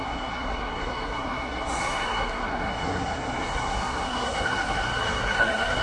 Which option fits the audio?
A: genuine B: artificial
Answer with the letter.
B